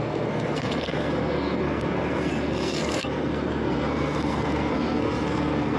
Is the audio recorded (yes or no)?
no